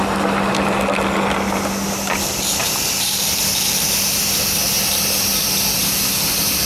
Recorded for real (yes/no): yes